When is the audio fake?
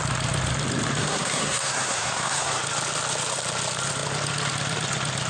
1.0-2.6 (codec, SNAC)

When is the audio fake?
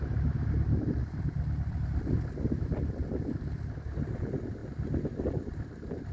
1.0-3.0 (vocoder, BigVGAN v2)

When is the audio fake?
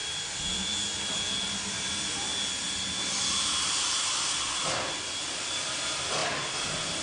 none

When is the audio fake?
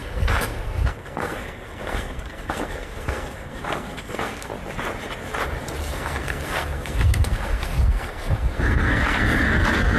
0.0-4.5 (codec, SNAC); 5.8-10.0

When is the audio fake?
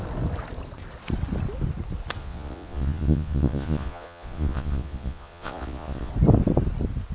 2.2-6.1 (vocoder, Vocos)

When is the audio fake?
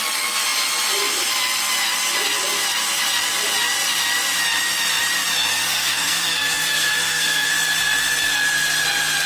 5.5-7.5 (codec, SNAC)